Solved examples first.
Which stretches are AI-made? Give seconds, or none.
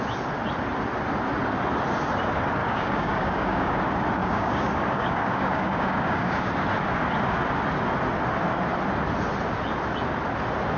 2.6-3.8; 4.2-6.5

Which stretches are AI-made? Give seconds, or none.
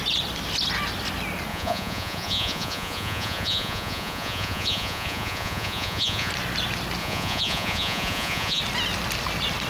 1.5-6.3; 7.0-8.6